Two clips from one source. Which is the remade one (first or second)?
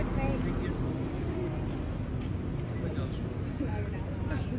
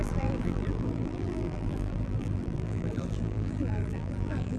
second